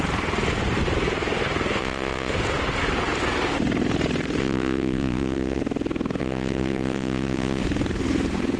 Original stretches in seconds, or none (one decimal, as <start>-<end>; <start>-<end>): 0.0-1.8; 2.3-4.4; 5.6-6.2; 7.6-8.6